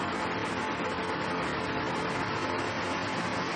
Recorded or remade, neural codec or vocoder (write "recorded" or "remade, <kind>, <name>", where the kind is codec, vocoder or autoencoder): recorded